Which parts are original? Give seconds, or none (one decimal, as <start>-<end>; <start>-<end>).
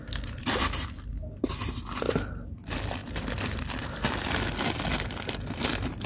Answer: 1.1-6.1